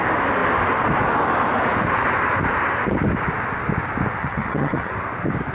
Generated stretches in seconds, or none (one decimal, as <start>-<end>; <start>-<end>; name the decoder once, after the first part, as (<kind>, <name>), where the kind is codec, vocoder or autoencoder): 4.2-4.9 (vocoder, HiFi-GAN)